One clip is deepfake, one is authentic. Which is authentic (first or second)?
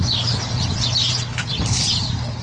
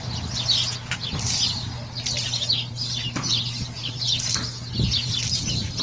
second